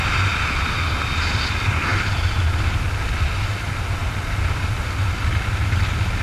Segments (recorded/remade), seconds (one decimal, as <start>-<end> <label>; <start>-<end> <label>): 0.0-6.2 recorded